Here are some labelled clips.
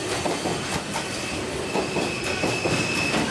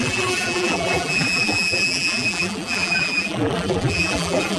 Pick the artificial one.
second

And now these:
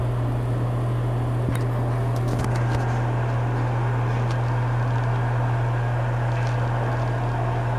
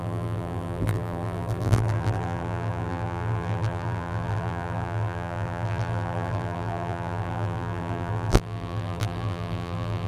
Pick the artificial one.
second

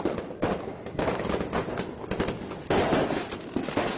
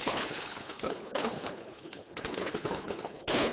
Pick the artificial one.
second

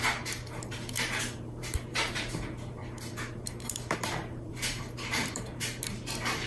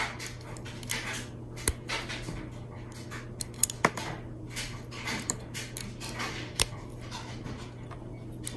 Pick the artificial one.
first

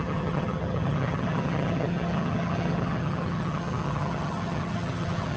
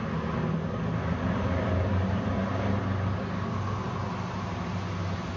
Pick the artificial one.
first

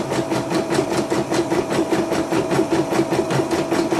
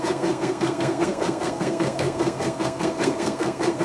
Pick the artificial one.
second